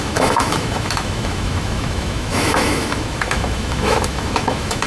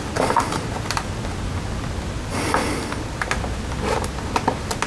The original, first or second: second